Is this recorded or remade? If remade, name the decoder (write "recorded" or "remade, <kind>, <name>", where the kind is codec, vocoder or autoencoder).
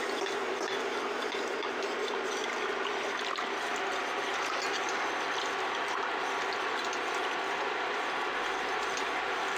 recorded